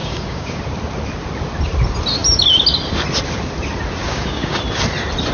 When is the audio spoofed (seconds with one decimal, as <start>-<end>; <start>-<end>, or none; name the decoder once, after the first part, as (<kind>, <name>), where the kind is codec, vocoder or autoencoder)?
0.0-0.6 (codec, DAC); 4.0-4.6